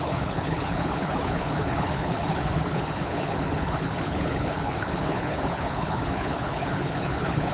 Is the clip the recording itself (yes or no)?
no